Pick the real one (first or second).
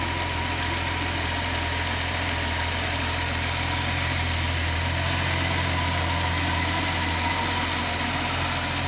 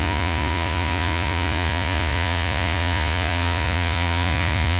first